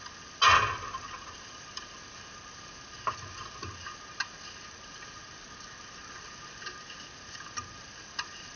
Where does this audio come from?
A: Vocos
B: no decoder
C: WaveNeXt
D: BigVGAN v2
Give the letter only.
B